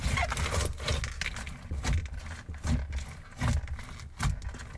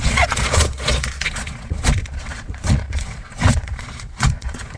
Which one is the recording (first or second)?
first